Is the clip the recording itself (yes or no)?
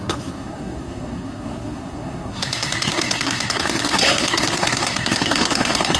no